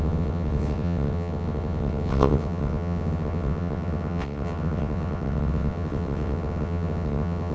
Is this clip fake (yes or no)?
yes